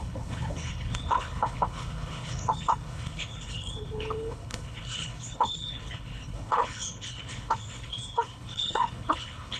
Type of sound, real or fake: fake